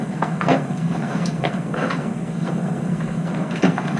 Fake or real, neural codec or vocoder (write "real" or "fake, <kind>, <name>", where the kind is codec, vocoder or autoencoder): fake, codec, SNAC